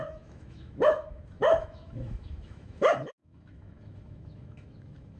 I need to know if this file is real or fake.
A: fake